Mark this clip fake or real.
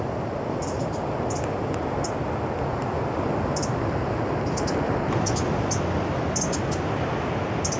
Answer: real